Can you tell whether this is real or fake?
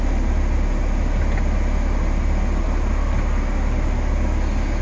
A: real